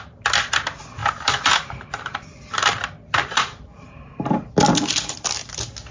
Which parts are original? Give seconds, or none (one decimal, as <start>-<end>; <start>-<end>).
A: 0.0-1.0; 4.5-5.9